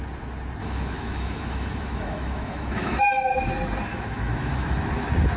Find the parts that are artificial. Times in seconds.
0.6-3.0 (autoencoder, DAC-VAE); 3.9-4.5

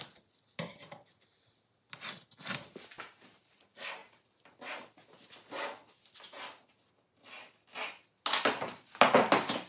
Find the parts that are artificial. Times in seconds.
none

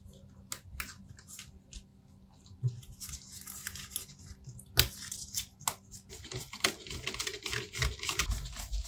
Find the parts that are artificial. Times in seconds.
none

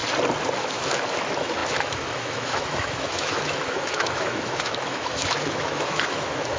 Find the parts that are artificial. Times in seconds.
0.6-6.6 (autoencoder, DAC-VAE)

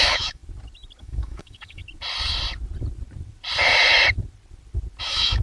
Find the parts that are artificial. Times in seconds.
0.0-0.4 (autoencoder, DAC-VAE); 1.0-1.8; 5.0-5.4